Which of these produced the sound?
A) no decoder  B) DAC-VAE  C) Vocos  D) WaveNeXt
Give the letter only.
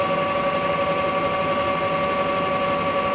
A